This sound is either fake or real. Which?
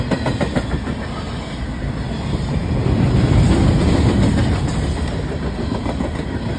real